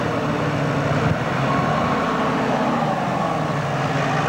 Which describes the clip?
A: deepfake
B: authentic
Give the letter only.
B